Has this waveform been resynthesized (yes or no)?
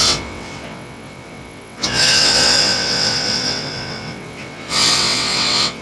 yes